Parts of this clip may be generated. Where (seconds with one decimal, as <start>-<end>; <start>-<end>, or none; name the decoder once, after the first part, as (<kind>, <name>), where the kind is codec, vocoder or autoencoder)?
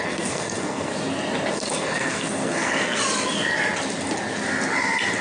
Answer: 0.0-0.9 (codec, SNAC); 1.5-3.0